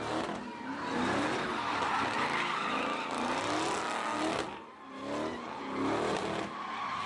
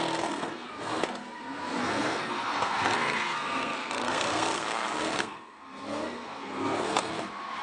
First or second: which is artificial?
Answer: second